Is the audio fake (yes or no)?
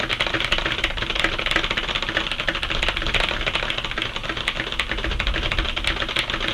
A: no